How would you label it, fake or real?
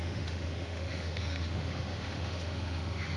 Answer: fake